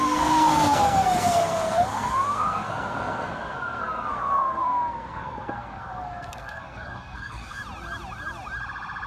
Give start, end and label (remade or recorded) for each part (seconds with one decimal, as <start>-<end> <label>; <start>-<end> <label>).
0.0-7.6 remade; 7.6-9.1 recorded